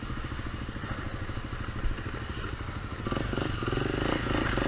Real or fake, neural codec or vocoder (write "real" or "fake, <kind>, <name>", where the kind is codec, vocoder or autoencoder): real